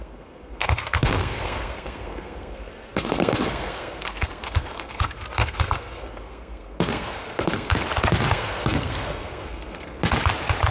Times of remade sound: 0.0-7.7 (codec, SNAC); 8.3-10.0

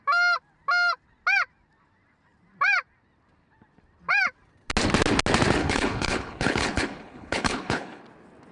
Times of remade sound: 5.6-8.0 (codec, HILCodec)

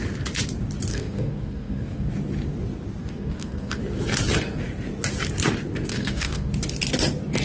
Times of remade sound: 0.9-2.1 (codec, SNAC); 3.0-3.8; 5.9-6.5

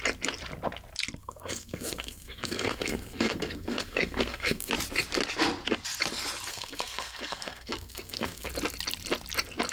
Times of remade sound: 1.2-4.7 (codec, SNAC); 6.5-8.5

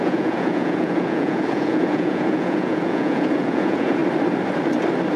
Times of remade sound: 0.0-4.0 (vocoder, Vocos)

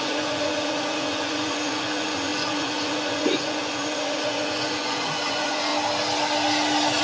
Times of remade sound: 0.0-5.7 (vocoder, Vocos)

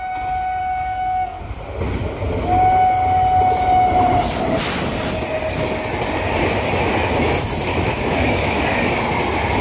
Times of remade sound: 0.6-1.4 (codec, DAC); 7.7-9.0